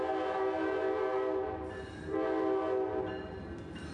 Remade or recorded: recorded